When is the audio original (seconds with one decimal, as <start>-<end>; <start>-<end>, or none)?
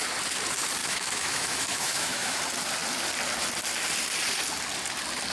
0.0-0.8; 2.4-5.3